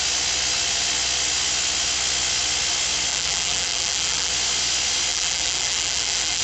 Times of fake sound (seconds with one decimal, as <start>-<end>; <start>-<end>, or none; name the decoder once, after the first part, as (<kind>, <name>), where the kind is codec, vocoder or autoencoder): 3.1-4.3 (vocoder, BigVGAN v2); 5.1-6.4